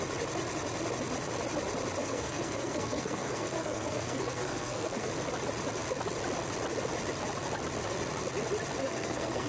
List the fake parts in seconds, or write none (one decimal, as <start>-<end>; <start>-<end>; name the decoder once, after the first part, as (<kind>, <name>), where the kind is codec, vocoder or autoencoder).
2.0-5.1 (codec, SNAC); 8.8-9.5